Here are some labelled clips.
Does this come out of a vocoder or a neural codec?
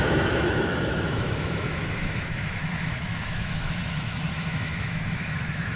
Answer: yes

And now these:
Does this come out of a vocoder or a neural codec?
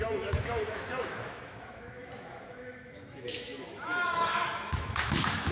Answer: yes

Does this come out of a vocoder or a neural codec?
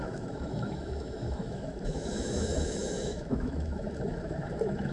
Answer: yes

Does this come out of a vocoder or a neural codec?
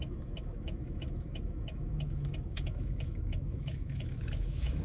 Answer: yes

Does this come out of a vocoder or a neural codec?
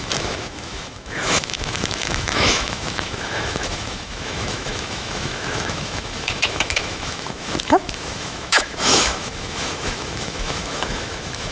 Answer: yes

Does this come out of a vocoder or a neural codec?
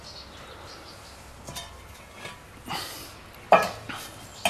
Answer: no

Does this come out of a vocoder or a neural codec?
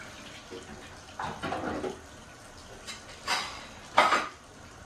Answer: no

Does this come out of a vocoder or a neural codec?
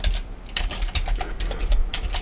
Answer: no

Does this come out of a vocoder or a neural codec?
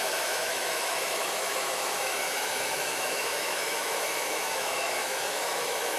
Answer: yes